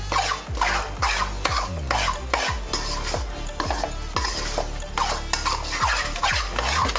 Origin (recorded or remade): recorded